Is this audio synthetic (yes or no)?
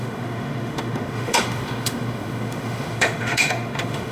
yes